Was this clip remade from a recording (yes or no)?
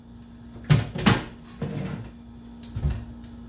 no